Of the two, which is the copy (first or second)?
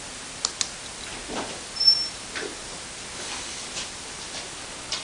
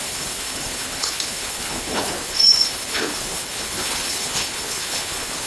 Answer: second